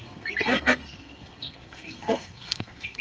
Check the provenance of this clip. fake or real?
fake